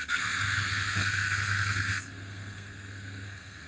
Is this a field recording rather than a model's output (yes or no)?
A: no